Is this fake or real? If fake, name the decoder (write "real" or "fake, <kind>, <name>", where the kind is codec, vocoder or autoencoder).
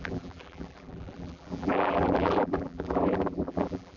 fake, vocoder, BigVGAN v2